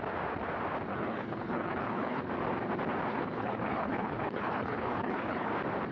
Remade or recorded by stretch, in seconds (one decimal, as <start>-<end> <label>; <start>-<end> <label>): 0.0-0.9 recorded; 0.9-2.3 remade; 2.3-3.1 recorded; 3.1-5.5 remade; 5.5-5.9 recorded